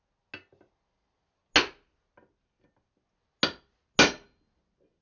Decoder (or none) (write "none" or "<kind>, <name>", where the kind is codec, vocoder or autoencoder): none